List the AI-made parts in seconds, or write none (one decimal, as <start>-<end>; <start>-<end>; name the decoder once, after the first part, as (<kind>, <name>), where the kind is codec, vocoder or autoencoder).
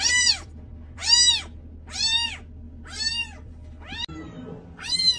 none